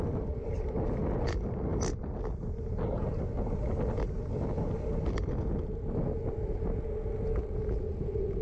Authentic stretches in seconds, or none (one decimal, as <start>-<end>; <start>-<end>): 0.0-8.4